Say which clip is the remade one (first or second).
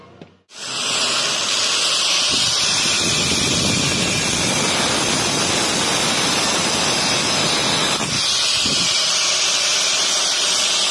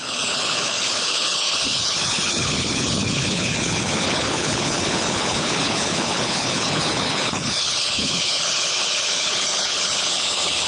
second